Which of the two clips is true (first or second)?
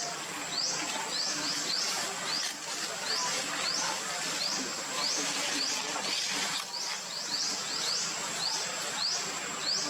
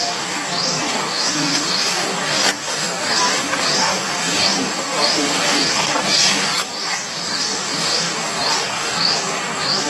first